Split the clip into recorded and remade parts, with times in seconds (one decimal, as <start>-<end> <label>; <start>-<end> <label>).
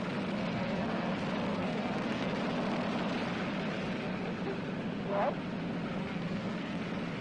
0.0-0.5 recorded; 0.5-1.1 remade; 1.1-1.5 recorded; 1.5-2.3 remade; 2.3-6.0 recorded; 6.0-6.8 remade; 6.8-7.2 recorded